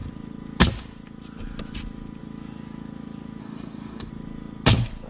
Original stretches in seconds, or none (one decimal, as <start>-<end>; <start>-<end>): 0.0-3.4; 4.1-5.1